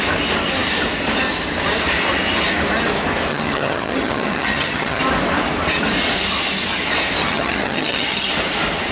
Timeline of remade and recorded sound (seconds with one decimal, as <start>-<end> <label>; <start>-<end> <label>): 0.0-3.3 recorded; 3.3-5.0 remade; 5.0-7.2 recorded; 7.2-8.3 remade; 8.3-8.9 recorded